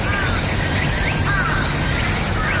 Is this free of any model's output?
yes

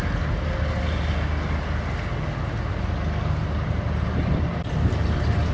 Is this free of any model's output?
yes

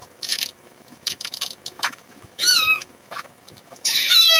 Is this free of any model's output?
no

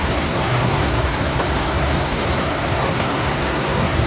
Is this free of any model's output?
no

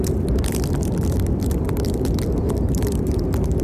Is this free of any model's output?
no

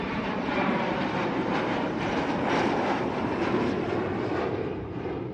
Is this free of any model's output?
no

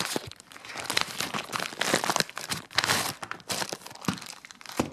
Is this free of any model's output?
no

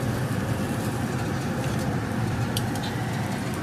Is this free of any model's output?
yes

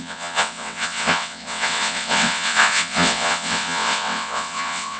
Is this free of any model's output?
no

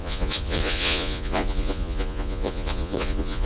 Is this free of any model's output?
no